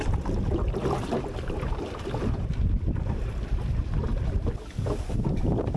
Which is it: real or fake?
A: real